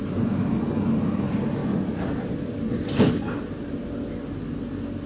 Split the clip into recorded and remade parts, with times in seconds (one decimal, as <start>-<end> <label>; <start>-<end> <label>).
0.0-5.1 recorded